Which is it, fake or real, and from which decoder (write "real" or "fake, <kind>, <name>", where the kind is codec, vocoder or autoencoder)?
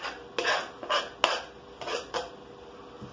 real